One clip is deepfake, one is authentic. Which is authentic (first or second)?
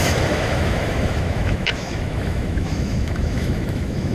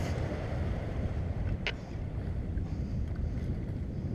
second